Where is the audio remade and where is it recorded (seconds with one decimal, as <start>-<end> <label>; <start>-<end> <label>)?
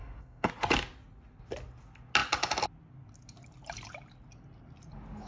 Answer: 0.0-0.5 remade; 0.5-5.3 recorded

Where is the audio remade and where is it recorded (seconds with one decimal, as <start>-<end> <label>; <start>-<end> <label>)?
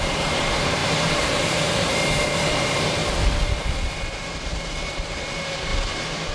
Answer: 0.0-3.0 remade; 3.0-4.2 recorded; 4.2-6.3 remade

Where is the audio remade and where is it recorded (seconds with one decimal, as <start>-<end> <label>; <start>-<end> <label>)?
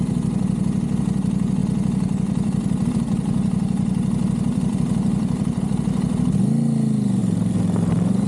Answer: 0.0-7.2 recorded; 7.2-8.3 remade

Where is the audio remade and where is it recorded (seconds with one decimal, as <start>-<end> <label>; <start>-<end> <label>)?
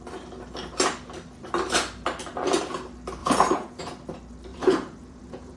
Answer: 0.0-3.2 recorded; 3.2-3.8 remade; 3.8-4.5 recorded; 4.5-5.6 remade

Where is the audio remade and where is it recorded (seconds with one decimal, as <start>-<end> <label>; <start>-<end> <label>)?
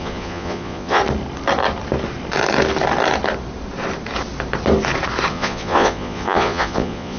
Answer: 0.0-1.0 remade; 1.0-5.3 recorded; 5.3-7.2 remade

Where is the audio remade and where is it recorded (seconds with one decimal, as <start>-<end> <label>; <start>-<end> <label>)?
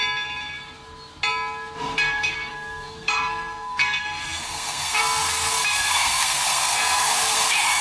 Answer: 0.0-1.8 recorded; 1.8-7.8 remade